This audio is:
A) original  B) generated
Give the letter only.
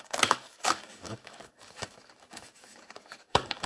B